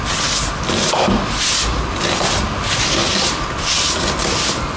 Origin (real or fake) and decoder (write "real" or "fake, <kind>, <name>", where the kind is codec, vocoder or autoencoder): real